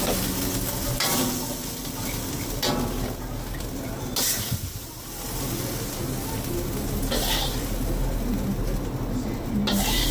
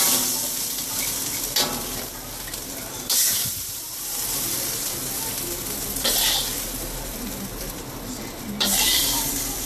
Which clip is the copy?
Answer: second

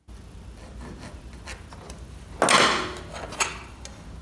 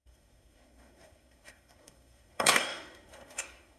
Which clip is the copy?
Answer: second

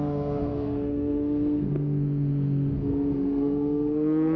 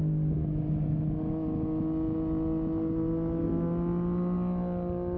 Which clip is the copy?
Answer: first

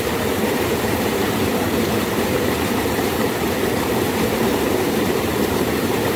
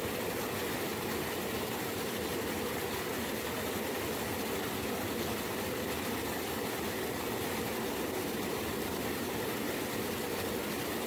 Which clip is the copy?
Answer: first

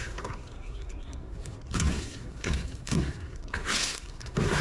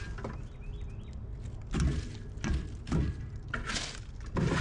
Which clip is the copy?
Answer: first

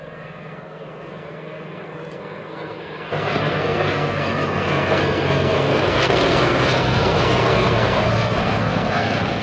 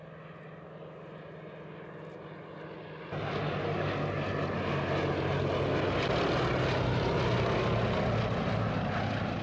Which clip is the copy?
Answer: first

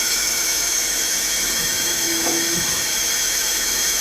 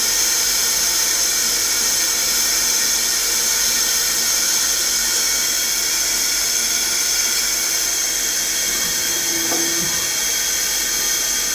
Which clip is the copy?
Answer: first